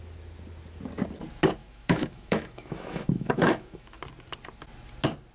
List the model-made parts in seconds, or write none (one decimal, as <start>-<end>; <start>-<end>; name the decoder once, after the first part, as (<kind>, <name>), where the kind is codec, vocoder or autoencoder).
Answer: 1.6-4.0 (autoencoder, DAC-VAE)